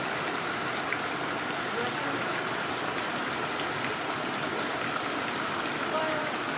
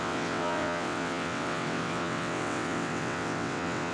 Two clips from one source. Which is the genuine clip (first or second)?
first